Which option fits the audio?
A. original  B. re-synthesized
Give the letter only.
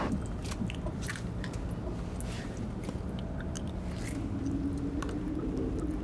A